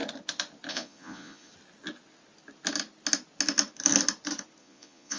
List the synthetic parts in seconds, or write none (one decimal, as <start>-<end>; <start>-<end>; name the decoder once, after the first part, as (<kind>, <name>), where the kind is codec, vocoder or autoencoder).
0.7-1.5 (vocoder, Vocos); 4.6-5.2